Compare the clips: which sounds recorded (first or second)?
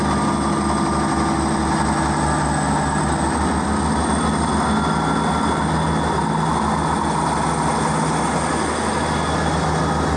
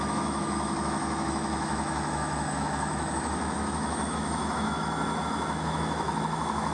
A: first